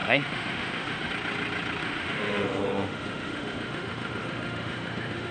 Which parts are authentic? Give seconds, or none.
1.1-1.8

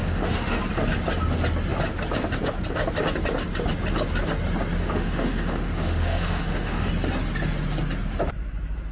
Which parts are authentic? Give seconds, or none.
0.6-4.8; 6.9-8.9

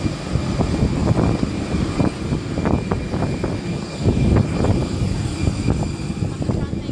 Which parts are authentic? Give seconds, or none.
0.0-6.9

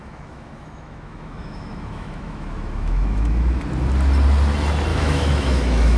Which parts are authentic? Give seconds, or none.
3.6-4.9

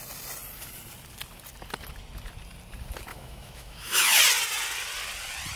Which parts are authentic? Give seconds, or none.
0.0-3.1; 4.2-5.6

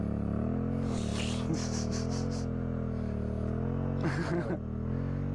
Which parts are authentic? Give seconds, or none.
0.0-5.3

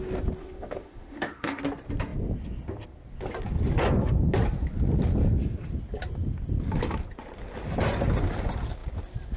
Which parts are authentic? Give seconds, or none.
0.0-0.4; 1.6-9.4